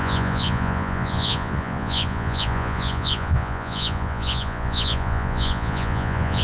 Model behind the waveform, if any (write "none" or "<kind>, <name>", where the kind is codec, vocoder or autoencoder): vocoder, Vocos